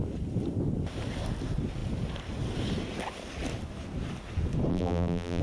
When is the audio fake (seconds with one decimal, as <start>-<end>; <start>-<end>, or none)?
4.7-5.4